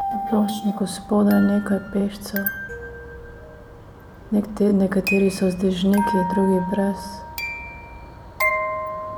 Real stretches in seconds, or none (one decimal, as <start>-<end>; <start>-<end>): 0.8-9.2